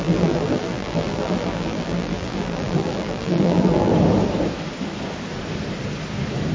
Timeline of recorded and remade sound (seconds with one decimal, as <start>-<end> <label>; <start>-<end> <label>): 0.0-3.9 remade; 3.9-6.5 recorded